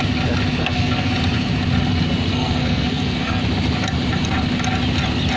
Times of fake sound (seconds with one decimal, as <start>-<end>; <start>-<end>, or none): 0.6-1.1; 2.3-3.4